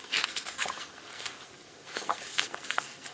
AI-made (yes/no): yes